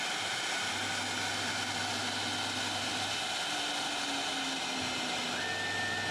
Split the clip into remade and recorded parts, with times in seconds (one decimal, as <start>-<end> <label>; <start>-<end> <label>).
0.0-6.1 recorded